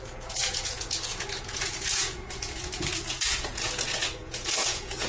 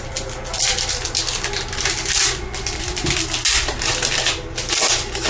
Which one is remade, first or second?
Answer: first